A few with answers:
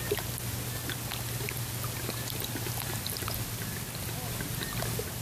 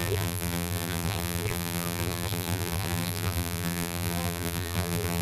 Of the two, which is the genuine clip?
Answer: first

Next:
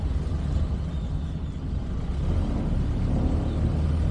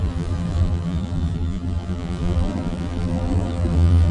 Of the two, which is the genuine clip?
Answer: first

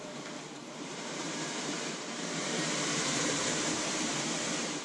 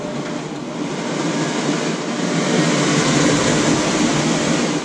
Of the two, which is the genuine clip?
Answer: second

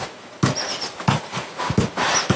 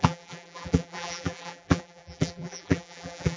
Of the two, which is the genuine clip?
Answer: first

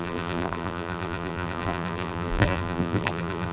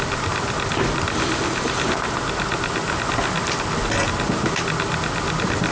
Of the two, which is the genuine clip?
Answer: second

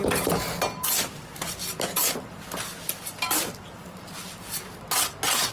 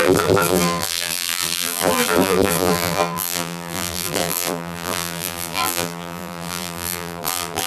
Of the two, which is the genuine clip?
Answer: first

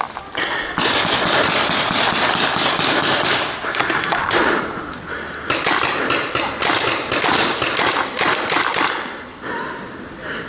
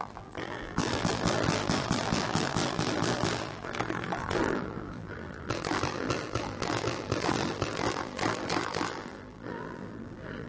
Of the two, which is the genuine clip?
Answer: first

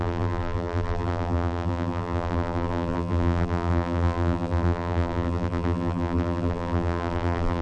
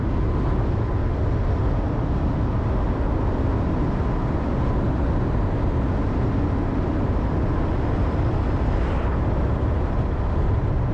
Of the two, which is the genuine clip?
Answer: second